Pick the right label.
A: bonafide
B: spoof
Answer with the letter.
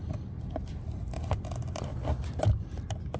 A